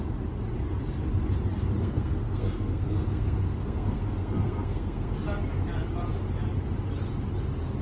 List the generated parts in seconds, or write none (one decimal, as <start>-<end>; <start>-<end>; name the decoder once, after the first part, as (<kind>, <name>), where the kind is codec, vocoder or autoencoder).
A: 1.8-5.1 (codec, SNAC)